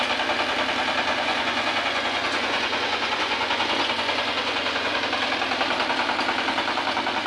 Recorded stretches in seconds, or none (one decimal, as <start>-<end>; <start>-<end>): 0.0-1.1; 5.0-7.3